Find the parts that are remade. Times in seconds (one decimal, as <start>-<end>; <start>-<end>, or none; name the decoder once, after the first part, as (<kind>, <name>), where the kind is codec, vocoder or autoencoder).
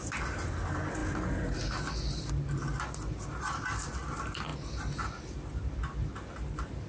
none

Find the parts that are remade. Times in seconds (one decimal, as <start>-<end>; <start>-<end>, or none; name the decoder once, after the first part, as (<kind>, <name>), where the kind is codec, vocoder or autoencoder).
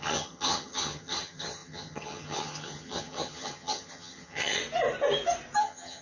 0.0-4.6 (vocoder, HiFi-GAN); 5.6-6.0